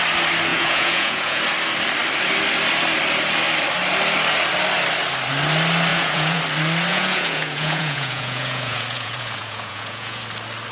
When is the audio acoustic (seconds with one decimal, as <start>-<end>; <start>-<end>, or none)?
0.0-0.5; 1.4-5.9; 6.4-6.9; 10.2-10.7